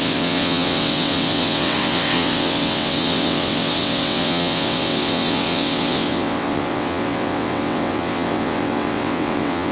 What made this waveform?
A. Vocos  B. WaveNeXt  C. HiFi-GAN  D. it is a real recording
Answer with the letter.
B